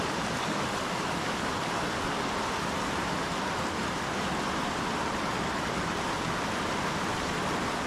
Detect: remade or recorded recorded